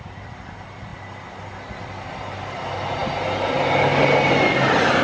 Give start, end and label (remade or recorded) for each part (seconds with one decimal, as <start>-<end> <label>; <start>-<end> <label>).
0.0-5.0 recorded

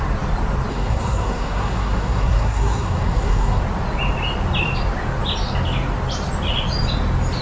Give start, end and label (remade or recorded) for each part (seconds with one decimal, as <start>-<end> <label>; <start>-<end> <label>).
0.0-0.7 recorded; 0.7-3.6 remade; 3.6-7.4 recorded

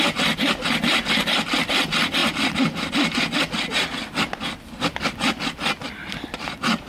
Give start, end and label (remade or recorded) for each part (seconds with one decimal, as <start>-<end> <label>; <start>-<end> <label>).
0.0-6.9 recorded

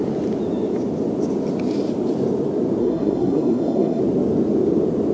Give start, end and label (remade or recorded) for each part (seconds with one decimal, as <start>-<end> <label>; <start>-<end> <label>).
0.0-2.8 recorded; 2.8-4.0 remade; 4.0-5.1 recorded

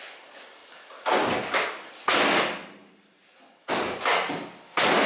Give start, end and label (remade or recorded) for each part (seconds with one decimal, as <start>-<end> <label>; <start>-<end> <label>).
0.0-5.1 recorded

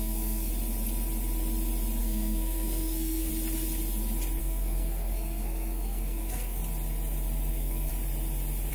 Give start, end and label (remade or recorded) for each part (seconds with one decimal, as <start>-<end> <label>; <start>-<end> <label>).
0.0-0.5 remade; 0.5-2.0 recorded; 2.0-3.3 remade; 3.3-4.4 recorded; 4.4-6.6 remade; 6.6-7.5 recorded; 7.5-7.9 remade; 7.9-8.7 recorded